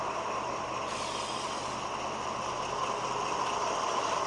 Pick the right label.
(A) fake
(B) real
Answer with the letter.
B